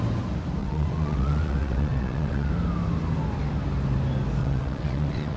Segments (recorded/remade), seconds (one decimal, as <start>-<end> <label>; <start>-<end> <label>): 0.0-0.6 recorded; 0.6-2.5 remade; 2.5-4.4 recorded; 4.4-5.4 remade